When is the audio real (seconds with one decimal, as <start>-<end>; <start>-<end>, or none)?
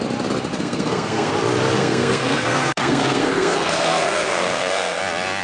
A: 0.0-0.5; 1.3-1.8; 5.0-5.4